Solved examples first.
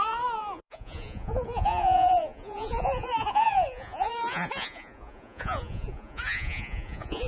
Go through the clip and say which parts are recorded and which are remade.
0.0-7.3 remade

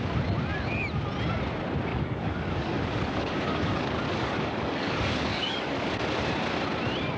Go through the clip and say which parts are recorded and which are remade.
0.0-1.9 recorded; 1.9-5.9 remade; 5.9-7.2 recorded